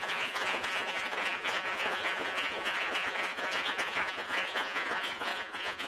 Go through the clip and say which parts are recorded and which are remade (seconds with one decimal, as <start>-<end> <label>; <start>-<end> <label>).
0.0-5.9 remade